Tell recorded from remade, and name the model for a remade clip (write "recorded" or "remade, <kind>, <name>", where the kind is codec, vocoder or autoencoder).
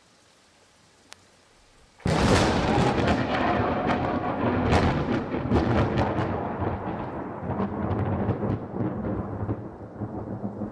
recorded